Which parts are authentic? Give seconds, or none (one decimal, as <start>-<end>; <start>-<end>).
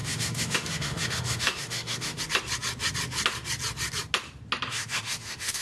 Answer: 2.2-4.7